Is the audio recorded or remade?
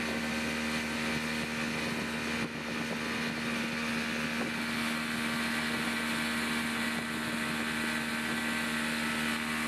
recorded